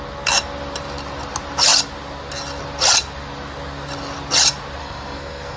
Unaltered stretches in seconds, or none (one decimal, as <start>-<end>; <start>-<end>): 0.0-4.8